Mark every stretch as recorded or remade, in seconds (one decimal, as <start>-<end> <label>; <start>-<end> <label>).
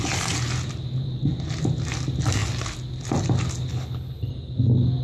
0.0-3.7 recorded; 3.7-4.3 remade; 4.3-5.0 recorded